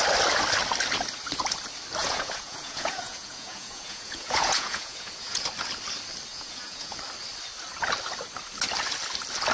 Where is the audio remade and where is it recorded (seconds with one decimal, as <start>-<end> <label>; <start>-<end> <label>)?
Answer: 0.0-2.0 recorded; 2.0-5.5 remade; 5.5-6.3 recorded; 6.3-7.0 remade; 7.0-9.5 recorded